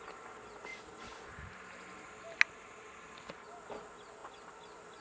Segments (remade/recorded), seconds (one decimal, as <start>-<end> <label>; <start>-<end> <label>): 0.0-5.0 recorded

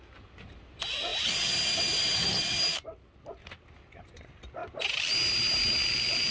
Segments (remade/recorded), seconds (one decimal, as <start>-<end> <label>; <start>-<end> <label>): 0.0-6.3 recorded

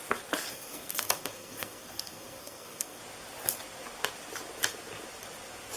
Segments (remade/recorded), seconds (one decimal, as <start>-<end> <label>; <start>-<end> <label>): 0.0-0.5 recorded; 0.5-3.0 remade; 3.0-5.8 recorded